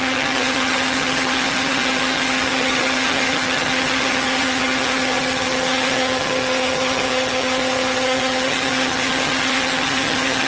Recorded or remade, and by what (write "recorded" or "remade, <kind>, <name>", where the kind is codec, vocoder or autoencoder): remade, vocoder, HiFi-GAN